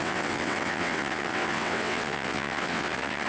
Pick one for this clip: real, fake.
fake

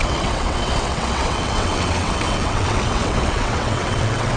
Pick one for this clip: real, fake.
fake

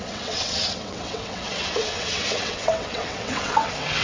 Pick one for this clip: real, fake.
fake